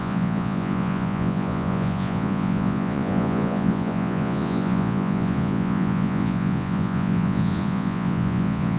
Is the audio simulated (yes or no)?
yes